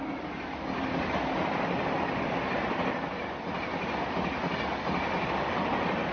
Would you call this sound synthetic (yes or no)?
no